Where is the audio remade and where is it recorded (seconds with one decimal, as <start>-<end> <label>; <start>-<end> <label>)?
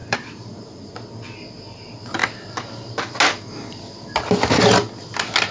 0.0-0.9 remade; 0.9-5.5 recorded